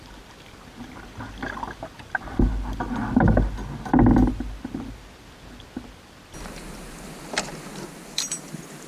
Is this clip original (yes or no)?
yes